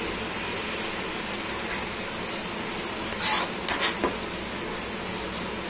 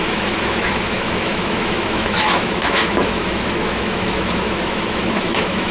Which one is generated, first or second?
second